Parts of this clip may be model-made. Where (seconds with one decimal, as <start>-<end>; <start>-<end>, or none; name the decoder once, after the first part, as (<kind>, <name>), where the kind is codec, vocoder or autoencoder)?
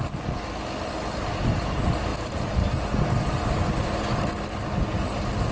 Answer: none